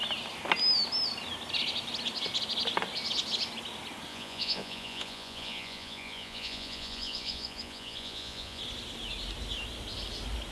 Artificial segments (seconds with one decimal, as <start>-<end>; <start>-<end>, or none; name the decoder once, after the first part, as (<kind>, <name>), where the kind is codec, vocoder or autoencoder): 4.1-8.6 (vocoder, Vocos)